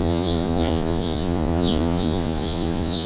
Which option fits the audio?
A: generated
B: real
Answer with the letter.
A